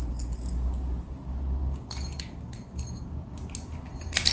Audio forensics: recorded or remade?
recorded